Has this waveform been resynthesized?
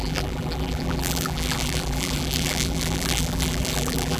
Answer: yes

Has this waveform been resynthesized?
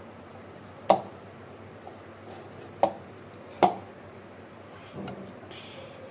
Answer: no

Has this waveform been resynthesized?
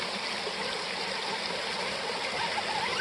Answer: no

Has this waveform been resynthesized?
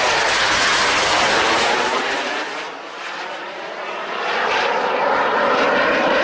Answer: yes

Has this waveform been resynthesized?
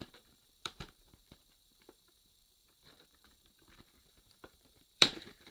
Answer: yes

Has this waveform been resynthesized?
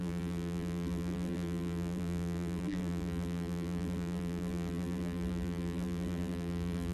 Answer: yes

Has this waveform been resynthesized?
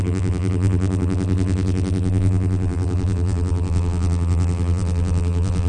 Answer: yes